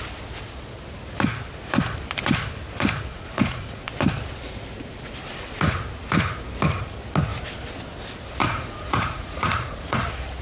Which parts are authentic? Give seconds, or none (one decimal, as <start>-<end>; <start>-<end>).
0.0-3.1; 3.9-8.4; 10.0-10.4